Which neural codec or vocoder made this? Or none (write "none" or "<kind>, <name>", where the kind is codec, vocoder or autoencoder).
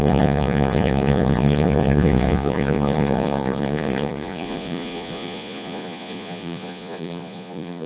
vocoder, Vocos